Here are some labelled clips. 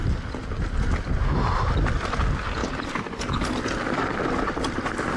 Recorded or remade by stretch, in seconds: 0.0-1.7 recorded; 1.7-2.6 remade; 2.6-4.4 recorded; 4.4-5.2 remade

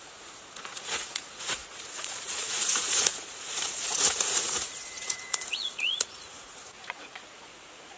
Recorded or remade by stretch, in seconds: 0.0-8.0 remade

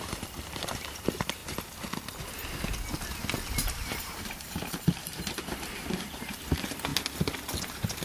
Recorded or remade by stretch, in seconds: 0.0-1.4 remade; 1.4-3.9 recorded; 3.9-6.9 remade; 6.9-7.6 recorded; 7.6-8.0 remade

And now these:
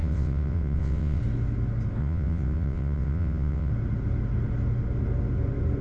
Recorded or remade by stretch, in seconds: 0.0-1.2 remade; 1.2-2.0 recorded; 2.0-3.7 remade; 3.7-5.8 recorded

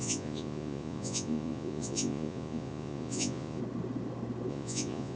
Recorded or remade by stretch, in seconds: 0.0-3.6 remade; 3.6-4.5 recorded; 4.5-5.2 remade

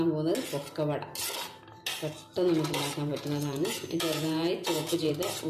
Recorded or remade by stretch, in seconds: 0.0-3.1 recorded; 3.1-5.1 remade; 5.1-5.5 recorded

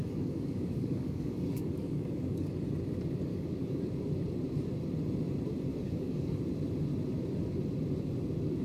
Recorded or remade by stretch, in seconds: 0.0-2.5 remade; 2.5-3.3 recorded; 3.3-3.8 remade; 3.8-5.7 recorded; 5.7-6.4 remade; 6.4-8.6 recorded

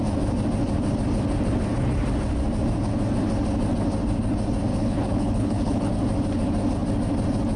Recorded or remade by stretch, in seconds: 0.0-4.7 recorded; 4.7-5.9 remade; 5.9-7.6 recorded